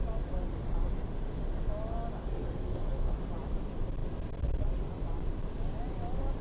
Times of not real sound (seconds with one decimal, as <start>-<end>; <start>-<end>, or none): 2.2-3.2